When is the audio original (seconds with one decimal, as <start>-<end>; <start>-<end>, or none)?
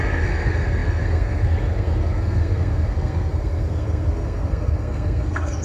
none